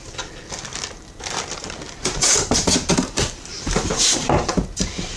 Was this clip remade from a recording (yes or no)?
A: yes